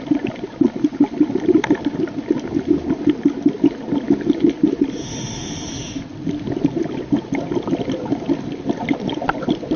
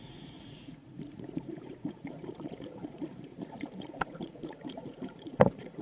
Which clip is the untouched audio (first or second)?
first